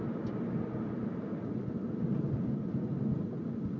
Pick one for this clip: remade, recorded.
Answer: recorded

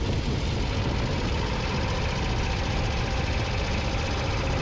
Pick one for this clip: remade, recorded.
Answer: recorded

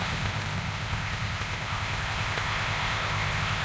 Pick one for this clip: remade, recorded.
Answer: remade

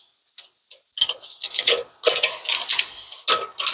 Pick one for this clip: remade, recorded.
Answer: recorded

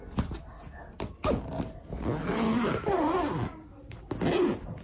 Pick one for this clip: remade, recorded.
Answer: recorded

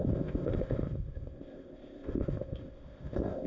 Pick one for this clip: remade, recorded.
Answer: remade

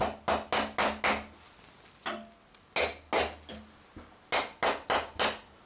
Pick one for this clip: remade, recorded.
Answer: recorded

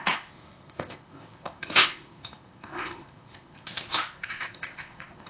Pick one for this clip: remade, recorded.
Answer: remade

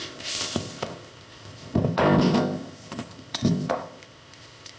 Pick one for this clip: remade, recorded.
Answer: remade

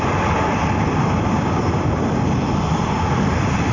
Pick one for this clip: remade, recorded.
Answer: recorded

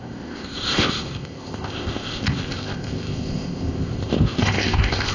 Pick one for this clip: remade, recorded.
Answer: remade